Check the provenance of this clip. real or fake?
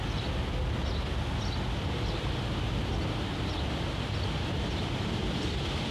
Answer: real